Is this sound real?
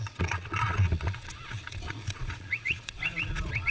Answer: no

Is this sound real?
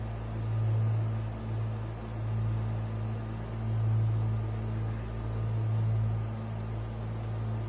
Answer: yes